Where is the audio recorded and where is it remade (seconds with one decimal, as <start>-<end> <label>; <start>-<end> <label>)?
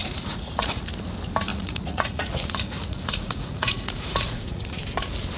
0.0-0.8 remade; 0.8-1.5 recorded; 1.5-4.7 remade; 4.7-5.4 recorded